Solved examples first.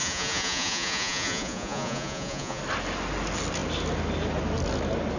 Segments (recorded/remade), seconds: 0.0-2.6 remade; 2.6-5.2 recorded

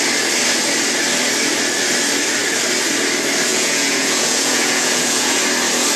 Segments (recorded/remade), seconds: 0.0-3.5 recorded; 3.5-5.4 remade; 5.4-6.0 recorded

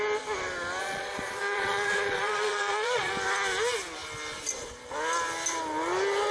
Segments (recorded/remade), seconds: 0.0-0.8 recorded; 0.8-3.1 remade; 3.1-6.3 recorded

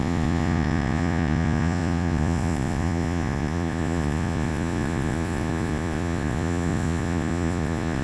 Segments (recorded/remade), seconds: 0.0-8.0 remade

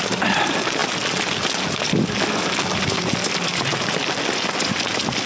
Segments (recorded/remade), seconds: 0.0-5.3 recorded